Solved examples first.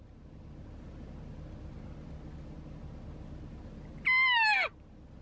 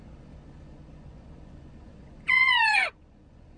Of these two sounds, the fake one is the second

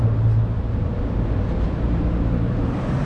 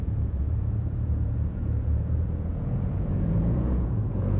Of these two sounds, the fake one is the second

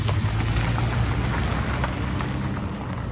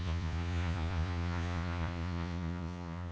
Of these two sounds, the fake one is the second